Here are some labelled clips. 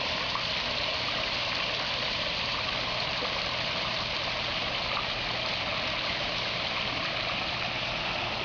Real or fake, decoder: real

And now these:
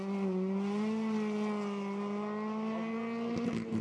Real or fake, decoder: real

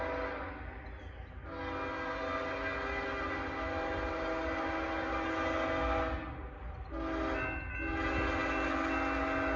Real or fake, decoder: real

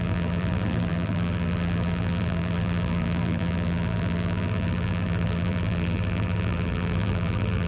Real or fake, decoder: fake, vocoder, BigVGAN v2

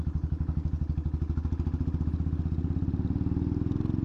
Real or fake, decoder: real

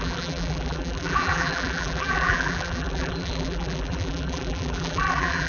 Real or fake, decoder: fake, vocoder, BigVGAN v2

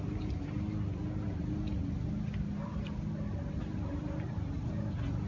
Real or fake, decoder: real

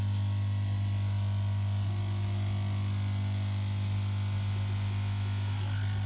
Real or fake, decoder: real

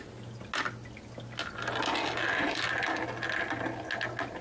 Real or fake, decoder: real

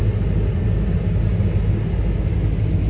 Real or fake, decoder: real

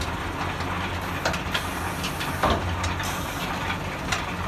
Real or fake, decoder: real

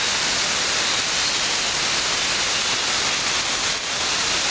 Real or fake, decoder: real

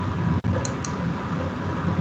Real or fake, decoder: real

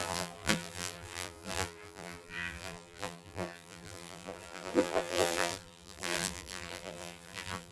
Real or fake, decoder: fake, vocoder, BigVGAN v2